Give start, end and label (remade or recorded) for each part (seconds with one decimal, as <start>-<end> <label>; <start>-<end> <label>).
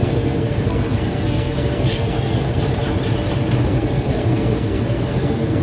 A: 0.0-2.6 remade; 2.6-3.6 recorded; 3.6-5.6 remade